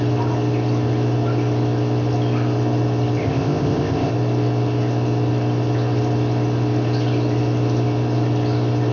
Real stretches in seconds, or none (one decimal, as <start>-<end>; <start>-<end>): 0.0-3.2; 4.1-8.9